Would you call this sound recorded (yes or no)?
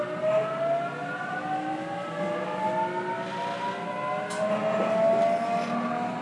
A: yes